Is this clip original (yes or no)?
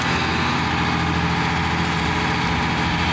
yes